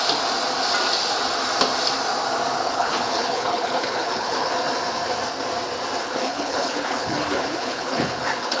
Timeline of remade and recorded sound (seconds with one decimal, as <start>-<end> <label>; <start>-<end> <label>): 0.0-2.6 recorded; 2.6-4.5 remade; 4.5-6.0 recorded; 6.0-8.6 remade